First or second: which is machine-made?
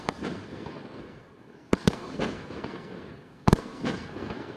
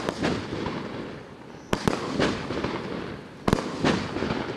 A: first